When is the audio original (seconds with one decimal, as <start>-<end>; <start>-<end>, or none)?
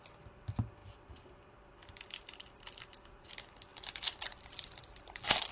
0.0-0.8; 3.3-3.7